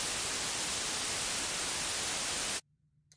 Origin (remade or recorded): recorded